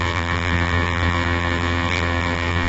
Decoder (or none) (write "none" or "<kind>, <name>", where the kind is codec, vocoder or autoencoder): vocoder, BigVGAN v2